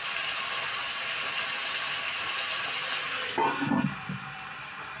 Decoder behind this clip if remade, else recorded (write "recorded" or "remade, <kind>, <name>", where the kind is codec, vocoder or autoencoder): recorded